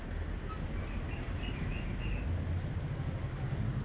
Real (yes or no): yes